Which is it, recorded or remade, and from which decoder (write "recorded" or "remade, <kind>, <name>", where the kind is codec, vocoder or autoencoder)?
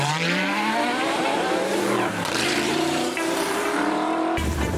remade, vocoder, BigVGAN v2